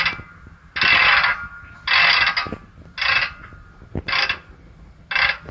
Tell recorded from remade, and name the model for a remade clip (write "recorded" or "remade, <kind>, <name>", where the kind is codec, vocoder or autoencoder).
recorded